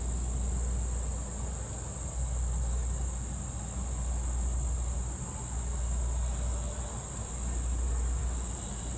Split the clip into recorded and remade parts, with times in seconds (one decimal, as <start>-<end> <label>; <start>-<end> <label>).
0.0-9.0 recorded